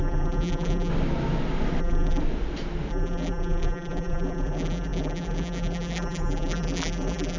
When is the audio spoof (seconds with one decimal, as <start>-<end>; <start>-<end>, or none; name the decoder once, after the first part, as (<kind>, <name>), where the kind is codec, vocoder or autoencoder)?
0.0-0.9 (vocoder, BigVGAN v2); 1.8-2.2; 2.9-7.4